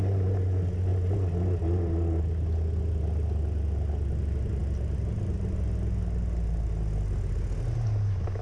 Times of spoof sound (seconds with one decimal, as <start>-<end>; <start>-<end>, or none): none